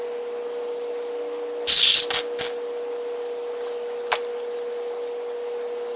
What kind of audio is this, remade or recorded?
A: recorded